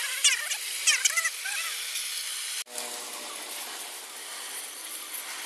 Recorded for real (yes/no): yes